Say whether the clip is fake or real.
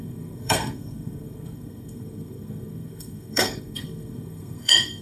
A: fake